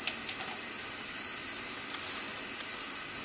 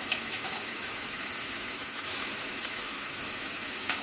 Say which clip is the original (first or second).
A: first